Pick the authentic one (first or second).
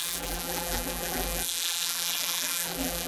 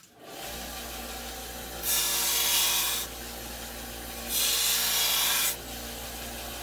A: second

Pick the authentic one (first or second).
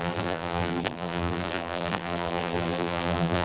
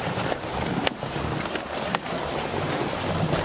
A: second